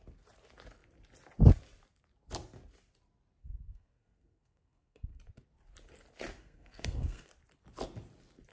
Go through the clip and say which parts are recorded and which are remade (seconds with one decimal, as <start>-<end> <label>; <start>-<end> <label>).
0.0-3.4 recorded; 3.4-5.2 remade; 5.2-6.4 recorded; 6.4-7.3 remade; 7.3-8.5 recorded